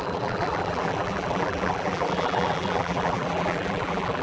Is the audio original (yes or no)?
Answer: no